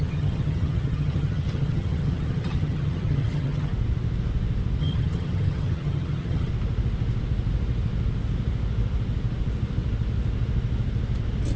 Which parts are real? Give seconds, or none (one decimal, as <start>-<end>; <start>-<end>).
3.7-4.8; 6.5-11.6